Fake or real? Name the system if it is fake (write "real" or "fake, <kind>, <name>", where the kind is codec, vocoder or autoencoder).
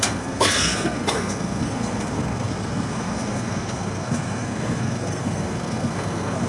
fake, codec, SNAC